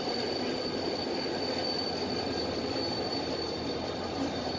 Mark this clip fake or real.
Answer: real